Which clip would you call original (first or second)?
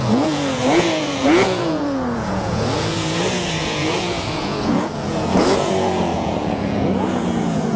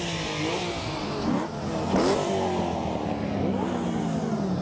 second